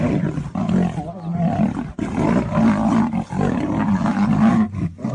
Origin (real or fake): real